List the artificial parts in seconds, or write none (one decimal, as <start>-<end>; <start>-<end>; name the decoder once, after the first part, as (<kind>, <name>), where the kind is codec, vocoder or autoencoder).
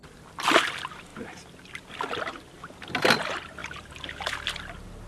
none